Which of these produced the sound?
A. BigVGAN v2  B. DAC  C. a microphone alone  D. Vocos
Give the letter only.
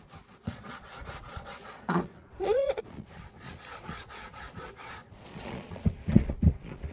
D